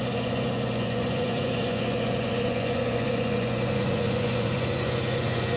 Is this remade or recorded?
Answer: remade